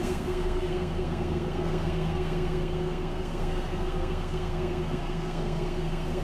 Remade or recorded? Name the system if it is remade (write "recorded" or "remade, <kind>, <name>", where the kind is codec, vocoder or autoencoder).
remade, codec, SNAC